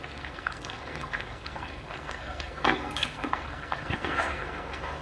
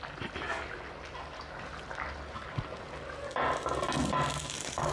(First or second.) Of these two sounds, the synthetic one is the first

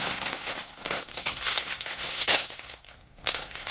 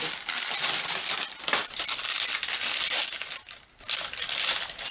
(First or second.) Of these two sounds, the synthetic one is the first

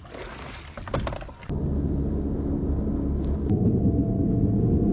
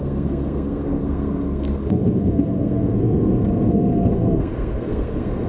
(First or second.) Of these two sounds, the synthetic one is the second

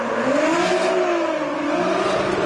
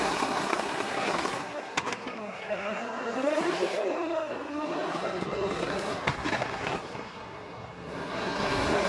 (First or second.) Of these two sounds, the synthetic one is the second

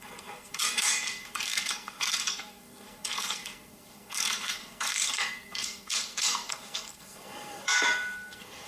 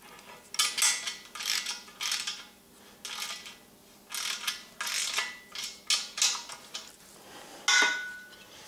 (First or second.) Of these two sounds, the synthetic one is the first